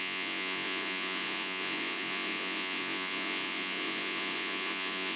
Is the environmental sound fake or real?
fake